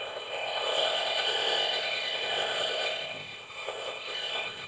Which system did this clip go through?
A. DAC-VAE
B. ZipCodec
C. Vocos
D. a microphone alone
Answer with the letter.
B